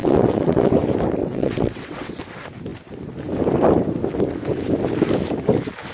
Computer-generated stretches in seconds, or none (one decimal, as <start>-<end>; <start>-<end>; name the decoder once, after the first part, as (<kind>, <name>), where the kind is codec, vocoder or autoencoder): 0.0-0.7 (vocoder, WaveNeXt); 1.2-2.2